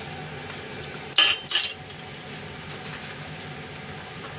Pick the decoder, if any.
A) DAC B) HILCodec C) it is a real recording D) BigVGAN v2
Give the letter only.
C